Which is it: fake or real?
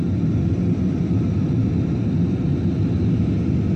real